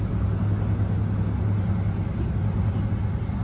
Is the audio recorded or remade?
recorded